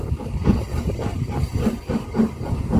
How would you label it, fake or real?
fake